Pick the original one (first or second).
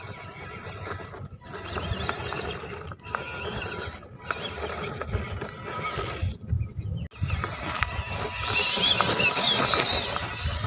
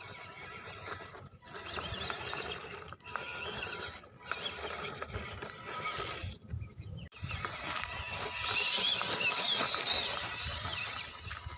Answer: first